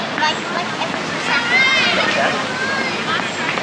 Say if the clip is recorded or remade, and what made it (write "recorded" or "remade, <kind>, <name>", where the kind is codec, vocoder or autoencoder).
recorded